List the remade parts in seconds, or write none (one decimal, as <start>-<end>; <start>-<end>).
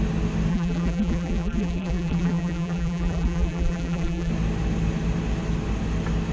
0.5-4.3